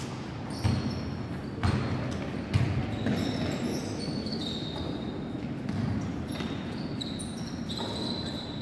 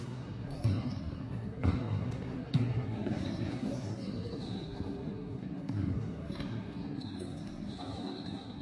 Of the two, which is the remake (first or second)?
second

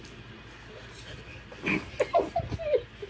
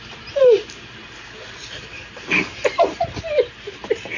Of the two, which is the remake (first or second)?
second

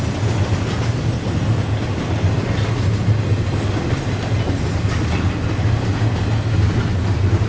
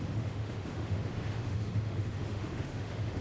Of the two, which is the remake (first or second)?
second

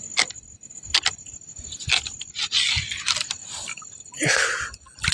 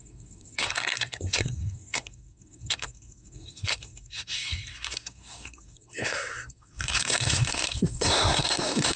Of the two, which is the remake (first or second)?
second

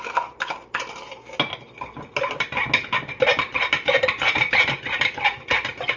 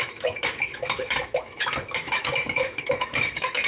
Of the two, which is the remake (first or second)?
second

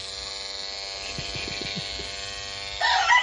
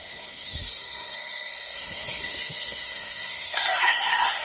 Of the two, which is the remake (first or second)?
second